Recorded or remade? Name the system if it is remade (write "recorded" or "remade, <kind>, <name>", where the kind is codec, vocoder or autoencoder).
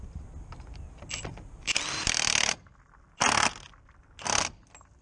recorded